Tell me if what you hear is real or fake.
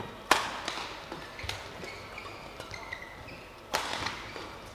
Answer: real